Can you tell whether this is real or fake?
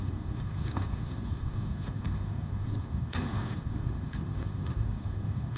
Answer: fake